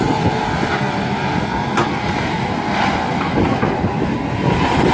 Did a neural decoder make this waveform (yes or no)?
no